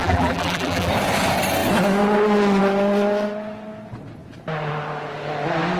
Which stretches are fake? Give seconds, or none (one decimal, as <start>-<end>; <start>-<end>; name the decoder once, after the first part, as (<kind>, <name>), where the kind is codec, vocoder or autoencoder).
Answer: 0.0-0.9 (vocoder, BigVGAN v2)